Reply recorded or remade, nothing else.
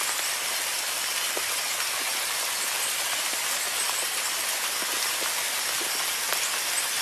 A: recorded